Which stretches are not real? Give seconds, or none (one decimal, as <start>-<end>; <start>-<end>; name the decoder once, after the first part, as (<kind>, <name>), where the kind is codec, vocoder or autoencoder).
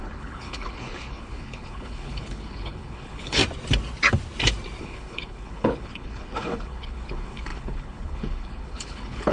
0.0-3.4 (codec, HILCodec); 4.8-9.3